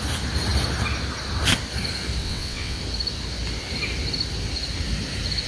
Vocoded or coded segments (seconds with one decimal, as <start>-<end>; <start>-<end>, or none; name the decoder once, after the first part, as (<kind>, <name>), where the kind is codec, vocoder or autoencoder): 2.2-2.8 (vocoder, WaveNeXt)